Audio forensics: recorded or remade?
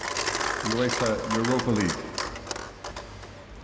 recorded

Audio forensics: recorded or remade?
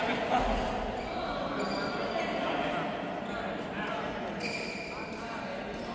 recorded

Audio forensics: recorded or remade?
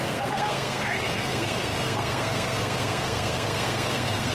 remade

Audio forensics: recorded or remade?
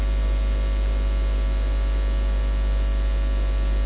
recorded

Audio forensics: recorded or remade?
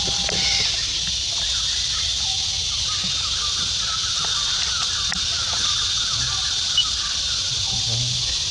recorded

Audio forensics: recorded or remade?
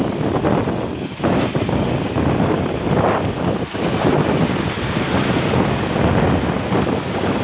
recorded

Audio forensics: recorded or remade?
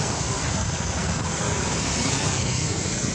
remade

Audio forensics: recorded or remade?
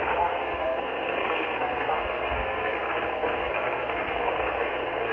remade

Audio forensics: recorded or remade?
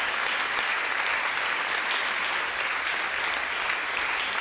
recorded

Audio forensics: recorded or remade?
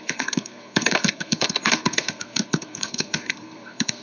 remade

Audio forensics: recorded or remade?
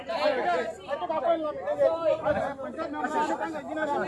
recorded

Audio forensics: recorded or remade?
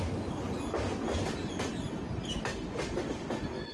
recorded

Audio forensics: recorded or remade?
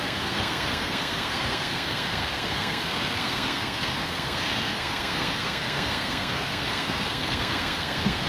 remade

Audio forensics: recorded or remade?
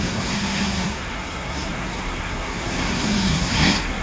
remade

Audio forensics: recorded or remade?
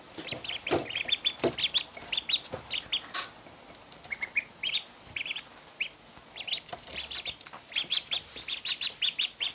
recorded